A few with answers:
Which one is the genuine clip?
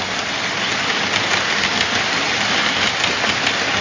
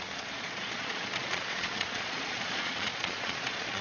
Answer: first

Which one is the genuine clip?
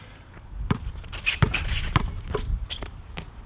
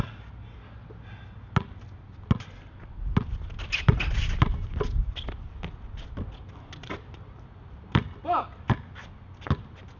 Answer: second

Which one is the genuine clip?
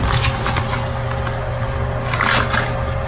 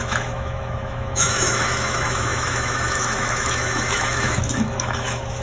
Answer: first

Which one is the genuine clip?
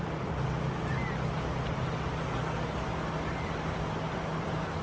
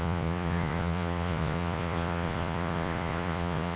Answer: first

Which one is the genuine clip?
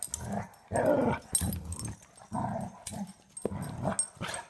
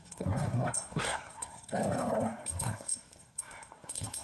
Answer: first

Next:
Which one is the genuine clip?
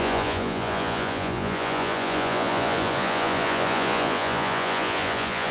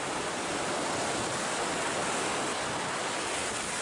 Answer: second